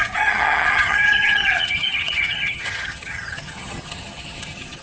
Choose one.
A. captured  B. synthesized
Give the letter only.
B